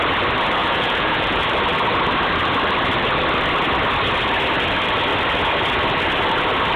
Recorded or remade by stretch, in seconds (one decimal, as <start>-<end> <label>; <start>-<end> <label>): 0.0-0.6 recorded; 0.6-1.4 remade; 1.4-6.8 recorded